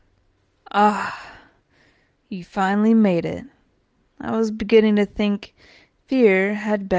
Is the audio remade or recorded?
recorded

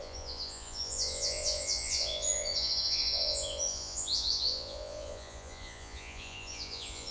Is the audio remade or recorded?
remade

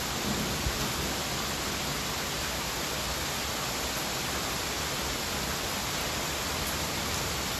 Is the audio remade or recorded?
recorded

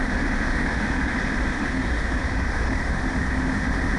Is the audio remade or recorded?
remade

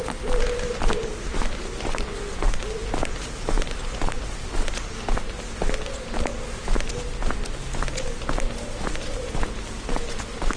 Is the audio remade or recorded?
recorded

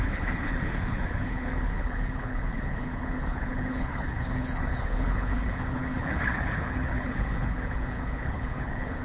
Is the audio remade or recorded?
remade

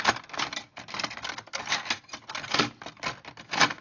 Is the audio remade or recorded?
recorded